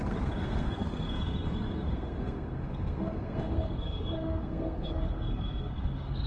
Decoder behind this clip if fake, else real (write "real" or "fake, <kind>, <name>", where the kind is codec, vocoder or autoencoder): fake, codec, SNAC